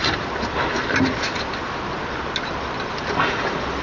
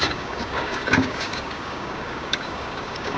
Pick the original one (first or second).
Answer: first